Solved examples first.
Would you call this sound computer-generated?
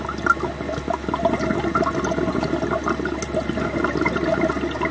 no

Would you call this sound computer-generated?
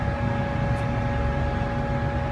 no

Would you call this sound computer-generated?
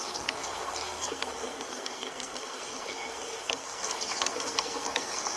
yes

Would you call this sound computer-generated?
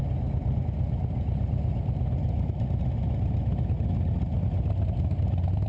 no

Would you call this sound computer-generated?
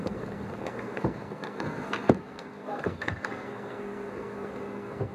yes